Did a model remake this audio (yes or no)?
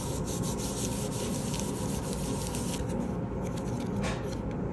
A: no